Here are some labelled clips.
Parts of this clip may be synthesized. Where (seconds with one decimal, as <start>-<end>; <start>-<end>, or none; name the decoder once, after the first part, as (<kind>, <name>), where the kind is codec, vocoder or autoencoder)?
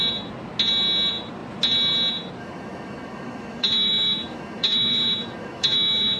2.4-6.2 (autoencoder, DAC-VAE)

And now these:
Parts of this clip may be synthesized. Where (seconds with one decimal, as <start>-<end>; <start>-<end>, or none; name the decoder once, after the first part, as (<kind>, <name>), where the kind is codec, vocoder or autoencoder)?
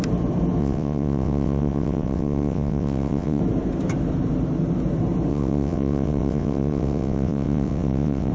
0.6-3.4 (vocoder, WaveNeXt); 5.3-8.3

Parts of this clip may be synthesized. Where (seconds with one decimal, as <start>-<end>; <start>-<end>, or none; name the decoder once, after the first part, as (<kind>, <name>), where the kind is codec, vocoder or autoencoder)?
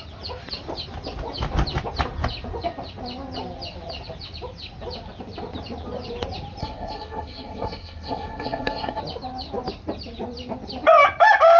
6.6-9.0 (codec, SNAC)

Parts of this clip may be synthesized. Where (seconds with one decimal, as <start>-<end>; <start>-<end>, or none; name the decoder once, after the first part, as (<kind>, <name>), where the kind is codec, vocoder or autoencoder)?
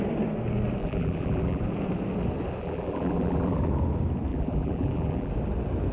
0.8-1.6 (vocoder, BigVGAN v2); 2.6-3.7; 4.3-5.3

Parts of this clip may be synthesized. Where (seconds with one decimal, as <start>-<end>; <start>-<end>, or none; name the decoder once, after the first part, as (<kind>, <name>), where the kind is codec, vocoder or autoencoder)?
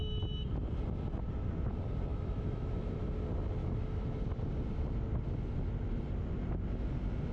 2.1-3.0 (autoencoder, DAC-VAE); 3.6-4.2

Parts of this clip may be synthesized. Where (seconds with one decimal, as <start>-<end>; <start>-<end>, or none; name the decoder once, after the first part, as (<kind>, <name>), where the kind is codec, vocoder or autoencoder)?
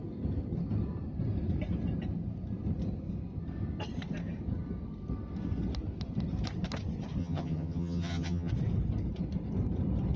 7.2-8.5 (vocoder, HiFi-GAN)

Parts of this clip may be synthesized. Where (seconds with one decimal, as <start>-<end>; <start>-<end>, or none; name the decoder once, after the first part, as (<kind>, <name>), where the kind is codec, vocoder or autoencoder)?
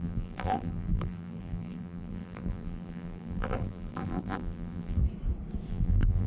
0.0-5.0 (vocoder, BigVGAN v2); 5.7-6.3